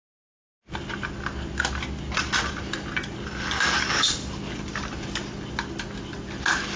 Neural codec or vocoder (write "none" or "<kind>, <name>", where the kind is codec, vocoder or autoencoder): none